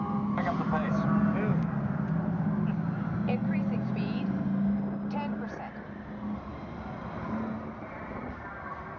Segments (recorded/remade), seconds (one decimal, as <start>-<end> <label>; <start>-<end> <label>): 0.0-9.0 recorded